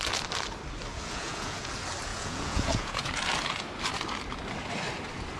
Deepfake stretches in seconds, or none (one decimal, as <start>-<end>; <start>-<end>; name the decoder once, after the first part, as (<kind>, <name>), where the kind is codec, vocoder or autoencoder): 0.9-1.7 (vocoder, Vocos); 2.1-3.1